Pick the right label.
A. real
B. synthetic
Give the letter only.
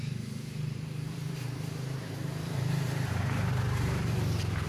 B